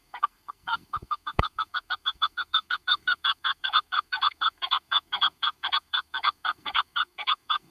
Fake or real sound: fake